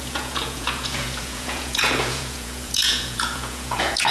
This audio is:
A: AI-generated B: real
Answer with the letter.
A